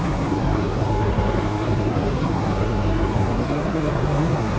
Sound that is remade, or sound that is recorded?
remade